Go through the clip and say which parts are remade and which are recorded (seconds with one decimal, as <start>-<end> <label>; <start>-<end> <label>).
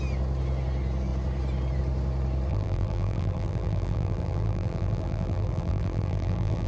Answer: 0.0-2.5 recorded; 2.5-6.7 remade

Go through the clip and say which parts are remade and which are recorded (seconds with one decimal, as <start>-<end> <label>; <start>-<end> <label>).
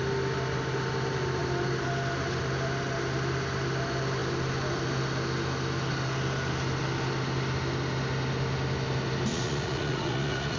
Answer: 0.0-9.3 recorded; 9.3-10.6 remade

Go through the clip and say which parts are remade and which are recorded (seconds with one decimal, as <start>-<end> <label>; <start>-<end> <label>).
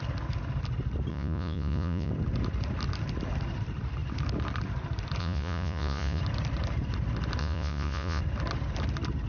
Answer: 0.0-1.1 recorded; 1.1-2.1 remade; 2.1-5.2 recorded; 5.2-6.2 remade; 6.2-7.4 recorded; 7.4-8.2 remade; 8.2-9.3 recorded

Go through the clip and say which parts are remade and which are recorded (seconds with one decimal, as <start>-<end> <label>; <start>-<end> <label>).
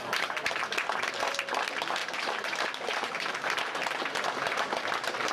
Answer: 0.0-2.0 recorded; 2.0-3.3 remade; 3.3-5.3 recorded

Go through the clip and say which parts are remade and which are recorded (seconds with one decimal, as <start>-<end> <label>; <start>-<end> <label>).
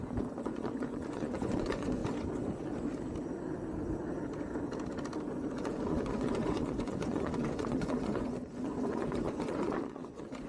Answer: 0.0-2.0 remade; 2.0-5.5 recorded; 5.5-10.5 remade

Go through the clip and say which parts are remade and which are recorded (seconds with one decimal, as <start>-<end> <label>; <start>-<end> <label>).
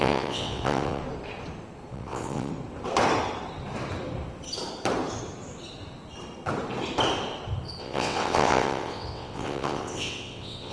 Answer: 0.0-1.0 remade; 1.0-1.9 recorded; 1.9-2.5 remade; 2.5-7.8 recorded; 7.8-10.7 remade